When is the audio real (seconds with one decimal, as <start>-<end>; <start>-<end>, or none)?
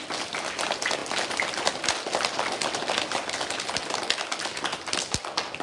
0.0-5.6